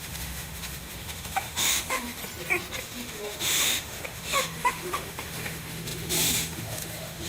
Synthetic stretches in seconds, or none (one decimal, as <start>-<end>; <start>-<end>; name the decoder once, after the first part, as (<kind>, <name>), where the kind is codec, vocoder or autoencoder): 0.0-2.2 (autoencoder, DAC-VAE); 2.8-7.3